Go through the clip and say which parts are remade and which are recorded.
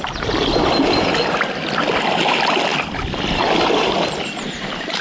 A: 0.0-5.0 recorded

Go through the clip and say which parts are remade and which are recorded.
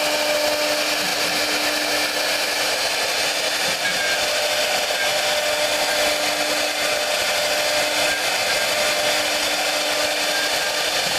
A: 0.0-11.2 recorded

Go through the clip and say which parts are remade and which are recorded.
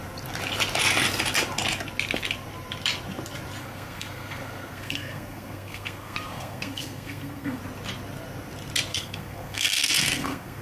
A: 0.0-3.6 recorded; 3.6-7.6 remade; 7.6-8.9 recorded; 8.9-10.6 remade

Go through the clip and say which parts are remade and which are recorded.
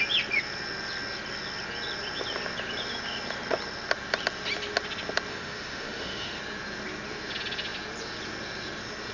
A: 0.0-5.3 recorded; 5.3-6.4 remade; 6.4-9.1 recorded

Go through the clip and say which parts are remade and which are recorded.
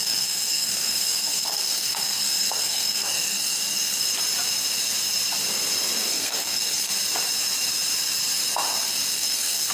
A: 0.0-4.0 remade; 4.0-6.1 recorded; 6.1-6.9 remade; 6.9-9.1 recorded; 9.1-9.7 remade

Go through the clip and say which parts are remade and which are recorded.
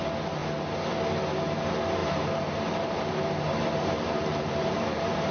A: 0.0-2.0 recorded; 2.0-5.3 remade